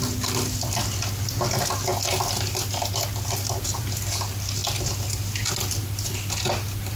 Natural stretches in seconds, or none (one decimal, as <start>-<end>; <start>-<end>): 0.0-7.0